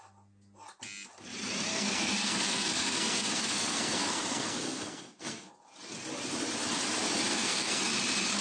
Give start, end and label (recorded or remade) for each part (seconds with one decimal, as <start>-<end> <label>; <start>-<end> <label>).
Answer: 0.0-1.7 recorded; 1.7-5.5 remade; 5.5-7.3 recorded; 7.3-7.8 remade; 7.8-8.4 recorded